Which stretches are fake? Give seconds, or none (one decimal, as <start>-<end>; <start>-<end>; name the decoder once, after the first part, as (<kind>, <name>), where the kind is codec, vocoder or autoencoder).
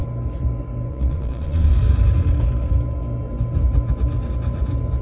0.9-1.7 (vocoder, Vocos)